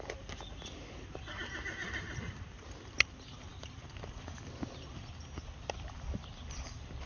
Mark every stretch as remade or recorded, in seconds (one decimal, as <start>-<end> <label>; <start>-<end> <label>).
0.0-7.1 recorded